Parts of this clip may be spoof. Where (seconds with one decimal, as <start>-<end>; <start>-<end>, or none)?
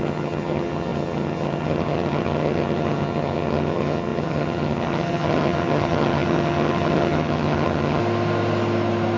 0.0-8.0